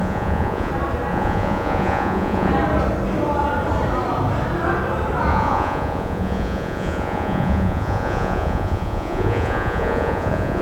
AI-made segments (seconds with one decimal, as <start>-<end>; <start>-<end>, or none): 0.0-0.7; 1.1-2.5; 5.3-10.6